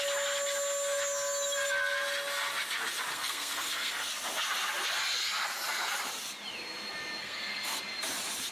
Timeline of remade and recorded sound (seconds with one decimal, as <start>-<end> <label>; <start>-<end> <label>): 0.0-3.1 recorded; 3.1-4.1 remade; 4.1-7.2 recorded; 7.2-7.8 remade; 7.8-8.5 recorded